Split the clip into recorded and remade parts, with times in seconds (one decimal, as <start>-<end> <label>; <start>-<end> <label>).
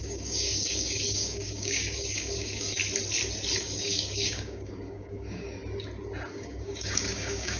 0.0-2.8 remade; 2.8-3.6 recorded; 3.6-5.6 remade; 5.6-6.3 recorded; 6.3-7.6 remade